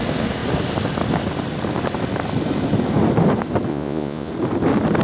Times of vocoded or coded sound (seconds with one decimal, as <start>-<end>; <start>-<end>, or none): 3.7-4.3